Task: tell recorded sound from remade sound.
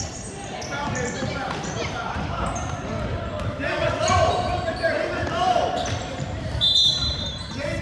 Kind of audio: remade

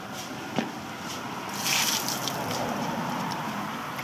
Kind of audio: remade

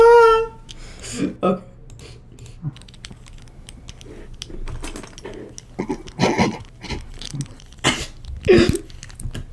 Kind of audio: recorded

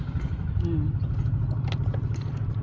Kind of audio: recorded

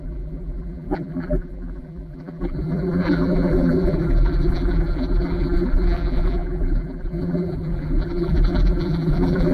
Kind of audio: remade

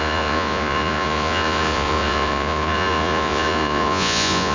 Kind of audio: remade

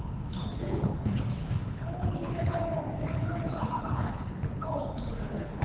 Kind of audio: remade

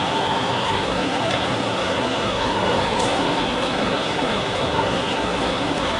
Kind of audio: remade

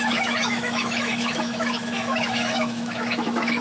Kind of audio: remade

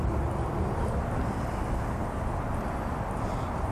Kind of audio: recorded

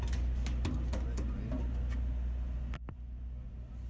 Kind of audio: recorded